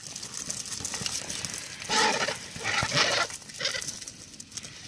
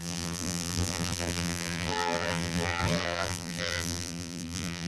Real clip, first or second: first